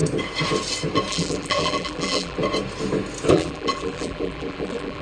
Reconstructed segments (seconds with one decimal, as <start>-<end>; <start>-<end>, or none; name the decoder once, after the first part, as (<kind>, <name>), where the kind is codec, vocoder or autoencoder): 1.1-2.4 (vocoder, BigVGAN v2); 3.3-5.0

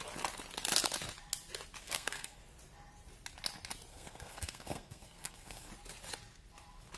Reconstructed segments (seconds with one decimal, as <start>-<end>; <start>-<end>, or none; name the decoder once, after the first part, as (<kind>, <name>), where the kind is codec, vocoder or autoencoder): 1.8-2.4 (codec, SNAC); 3.9-5.7

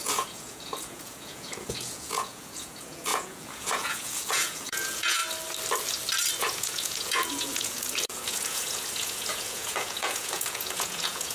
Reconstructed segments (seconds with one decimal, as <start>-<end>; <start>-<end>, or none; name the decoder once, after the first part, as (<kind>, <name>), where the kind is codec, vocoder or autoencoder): 0.0-5.2 (vocoder, Vocos); 6.4-11.3

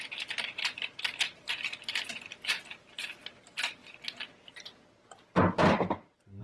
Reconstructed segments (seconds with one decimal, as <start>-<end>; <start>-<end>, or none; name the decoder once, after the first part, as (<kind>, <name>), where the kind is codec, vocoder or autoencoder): 0.0-3.8 (vocoder, BigVGAN v2); 4.3-6.4

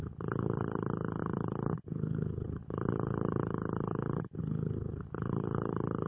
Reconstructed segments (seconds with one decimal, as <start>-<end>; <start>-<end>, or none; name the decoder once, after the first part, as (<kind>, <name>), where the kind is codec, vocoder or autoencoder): 0.0-6.1 (codec, HILCodec)